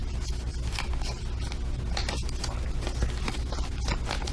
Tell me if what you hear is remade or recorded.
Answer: recorded